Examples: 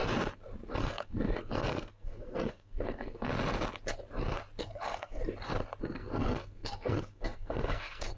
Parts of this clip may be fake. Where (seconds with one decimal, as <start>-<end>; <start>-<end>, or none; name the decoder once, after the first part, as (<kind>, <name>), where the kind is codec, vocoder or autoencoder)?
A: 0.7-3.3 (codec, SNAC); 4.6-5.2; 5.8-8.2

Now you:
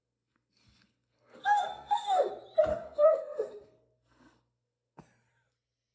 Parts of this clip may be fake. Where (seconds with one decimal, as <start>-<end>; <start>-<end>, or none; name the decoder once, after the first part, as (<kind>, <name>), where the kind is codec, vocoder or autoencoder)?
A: 0.0-2.3 (codec, SNAC); 2.7-5.0

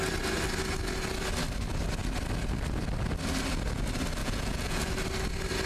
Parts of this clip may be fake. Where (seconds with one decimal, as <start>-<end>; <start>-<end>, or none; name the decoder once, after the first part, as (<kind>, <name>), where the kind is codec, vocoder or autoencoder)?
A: 4.2-4.9 (vocoder, Vocos)

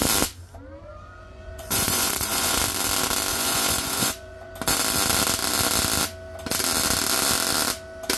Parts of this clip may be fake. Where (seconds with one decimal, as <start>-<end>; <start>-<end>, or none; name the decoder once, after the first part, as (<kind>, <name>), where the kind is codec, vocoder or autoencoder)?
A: 0.8-2.6 (vocoder, Vocos); 3.3-4.5

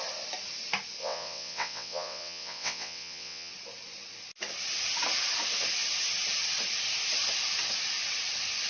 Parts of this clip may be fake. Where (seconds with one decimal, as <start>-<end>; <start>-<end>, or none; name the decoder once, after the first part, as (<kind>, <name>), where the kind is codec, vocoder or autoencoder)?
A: 1.0-3.5 (vocoder, WaveNeXt)

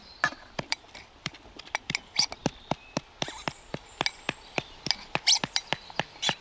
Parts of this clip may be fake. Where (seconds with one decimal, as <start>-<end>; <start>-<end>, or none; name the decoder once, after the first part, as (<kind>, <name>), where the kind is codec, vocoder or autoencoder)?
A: 0.0-1.3 (vocoder, BigVGAN v2)

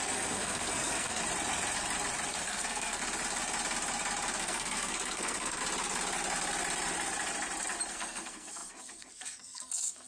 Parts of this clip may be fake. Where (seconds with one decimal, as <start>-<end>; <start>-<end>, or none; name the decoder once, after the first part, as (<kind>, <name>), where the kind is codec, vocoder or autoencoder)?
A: 0.0-1.2 (codec, SNAC); 2.4-3.0; 4.4-5.6; 7.9-10.1

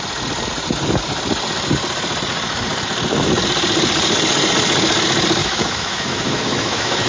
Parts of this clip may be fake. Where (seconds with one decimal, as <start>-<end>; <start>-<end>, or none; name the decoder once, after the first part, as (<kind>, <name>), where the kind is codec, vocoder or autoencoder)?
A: 5.4-7.1 (autoencoder, DAC-VAE)